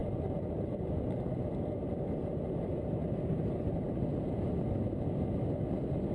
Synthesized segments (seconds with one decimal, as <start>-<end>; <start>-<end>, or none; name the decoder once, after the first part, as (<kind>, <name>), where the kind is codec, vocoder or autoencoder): 0.0-0.8 (vocoder, BigVGAN v2); 3.0-4.0

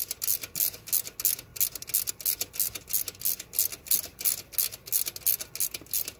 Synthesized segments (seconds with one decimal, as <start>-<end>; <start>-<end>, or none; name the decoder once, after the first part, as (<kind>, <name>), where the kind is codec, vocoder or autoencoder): none

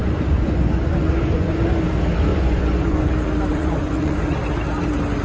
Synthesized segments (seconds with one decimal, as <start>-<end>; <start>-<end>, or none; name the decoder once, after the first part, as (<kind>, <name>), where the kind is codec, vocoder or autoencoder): 0.0-1.6 (vocoder, Vocos); 2.3-3.1; 3.5-4.4

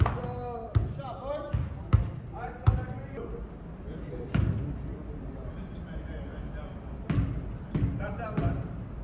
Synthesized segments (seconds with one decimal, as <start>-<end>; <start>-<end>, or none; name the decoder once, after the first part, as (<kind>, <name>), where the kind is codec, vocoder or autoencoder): none

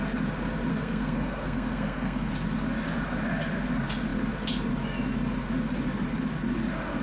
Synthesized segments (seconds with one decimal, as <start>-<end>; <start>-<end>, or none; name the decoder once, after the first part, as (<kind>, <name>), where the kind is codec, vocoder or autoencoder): 0.7-2.3 (codec, SNAC)

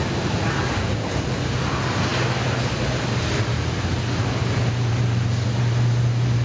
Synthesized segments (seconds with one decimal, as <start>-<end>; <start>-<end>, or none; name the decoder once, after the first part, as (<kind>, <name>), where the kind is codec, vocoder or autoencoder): none

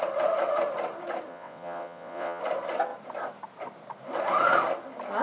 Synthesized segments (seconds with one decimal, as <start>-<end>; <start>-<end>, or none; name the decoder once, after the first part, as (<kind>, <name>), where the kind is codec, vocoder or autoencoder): 1.3-2.4 (vocoder, WaveNeXt)